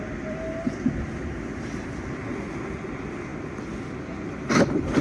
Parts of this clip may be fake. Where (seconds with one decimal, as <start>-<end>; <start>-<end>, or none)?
0.0-5.0